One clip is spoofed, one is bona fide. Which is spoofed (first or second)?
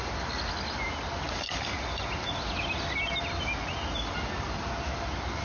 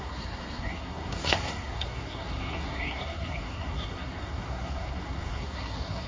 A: second